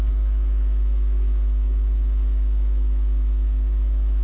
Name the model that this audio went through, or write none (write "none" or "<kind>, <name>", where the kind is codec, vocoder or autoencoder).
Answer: autoencoder, DAC-VAE